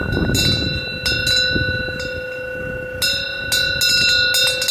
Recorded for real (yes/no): yes